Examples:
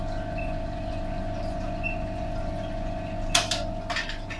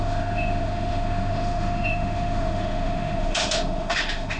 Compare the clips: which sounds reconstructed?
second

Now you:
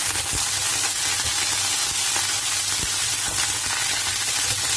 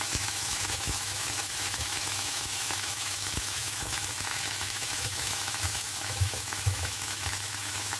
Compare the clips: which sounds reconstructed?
second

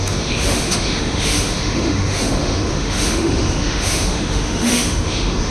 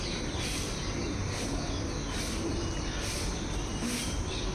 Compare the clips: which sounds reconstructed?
first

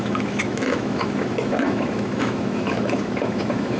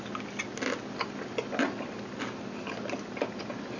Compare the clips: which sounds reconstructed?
first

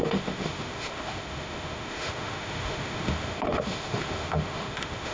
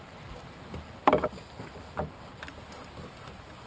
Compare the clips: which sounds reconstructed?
first